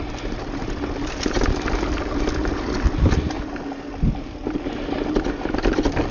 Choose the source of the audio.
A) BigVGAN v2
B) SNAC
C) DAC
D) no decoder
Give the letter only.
D